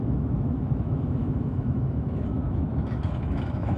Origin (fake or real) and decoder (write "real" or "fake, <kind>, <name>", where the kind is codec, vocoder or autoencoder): fake, autoencoder, DAC-VAE